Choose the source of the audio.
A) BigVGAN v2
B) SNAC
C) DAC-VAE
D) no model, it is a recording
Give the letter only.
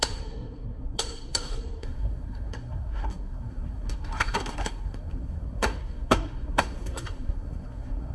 B